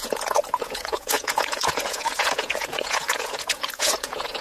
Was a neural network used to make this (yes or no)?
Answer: yes